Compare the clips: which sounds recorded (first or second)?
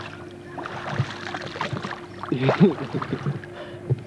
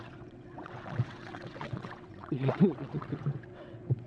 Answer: first